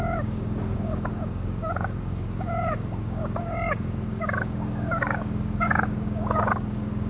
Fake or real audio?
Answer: fake